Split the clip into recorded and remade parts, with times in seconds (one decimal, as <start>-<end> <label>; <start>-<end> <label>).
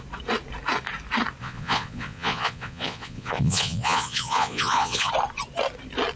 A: 0.0-1.4 recorded; 1.4-5.1 remade; 5.1-6.2 recorded